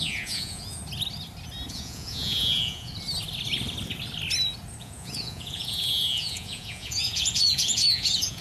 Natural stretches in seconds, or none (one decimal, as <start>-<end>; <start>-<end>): 0.8-1.7; 2.9-4.8